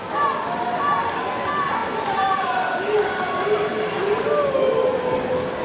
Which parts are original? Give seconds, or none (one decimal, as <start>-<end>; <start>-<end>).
0.0-1.8